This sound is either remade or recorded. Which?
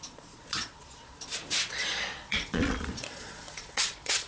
remade